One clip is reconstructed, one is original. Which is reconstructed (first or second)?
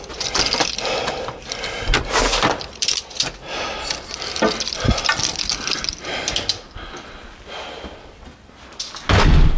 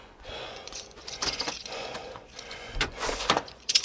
second